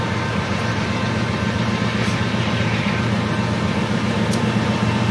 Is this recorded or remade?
remade